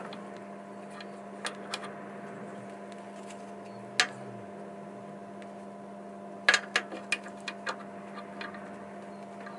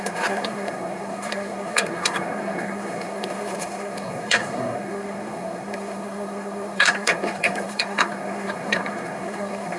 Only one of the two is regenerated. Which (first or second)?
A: second